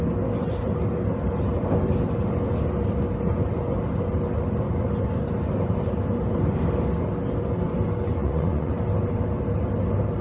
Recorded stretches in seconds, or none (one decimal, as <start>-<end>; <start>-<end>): 0.0-8.2; 8.7-10.2